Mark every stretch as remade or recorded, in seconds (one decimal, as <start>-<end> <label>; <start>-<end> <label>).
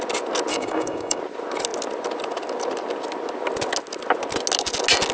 0.0-0.5 recorded; 0.5-1.2 remade; 1.2-5.1 recorded